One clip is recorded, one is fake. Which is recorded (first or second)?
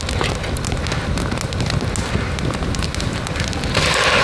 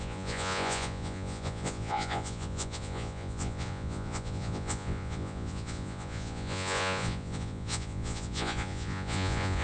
first